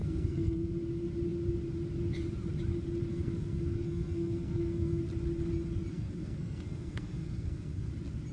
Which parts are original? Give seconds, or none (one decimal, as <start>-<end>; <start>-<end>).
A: 0.7-3.1; 5.0-5.9; 7.9-8.3